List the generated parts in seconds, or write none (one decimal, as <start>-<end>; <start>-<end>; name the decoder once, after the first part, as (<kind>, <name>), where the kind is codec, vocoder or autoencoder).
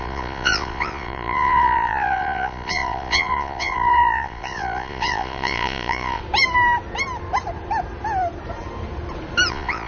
0.0-6.2 (vocoder, Vocos); 9.5-9.9